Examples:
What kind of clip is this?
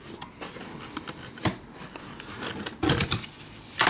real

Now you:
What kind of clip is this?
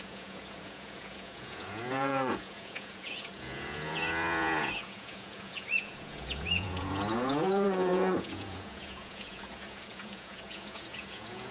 fake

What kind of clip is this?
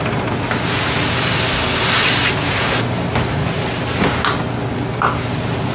real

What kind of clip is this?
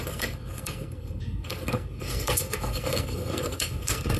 fake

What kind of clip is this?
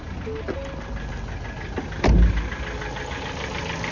real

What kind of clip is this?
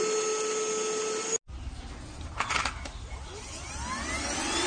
real